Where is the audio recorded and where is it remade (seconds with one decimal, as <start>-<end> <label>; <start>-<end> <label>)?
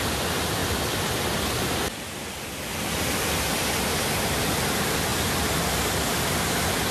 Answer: 0.0-6.9 recorded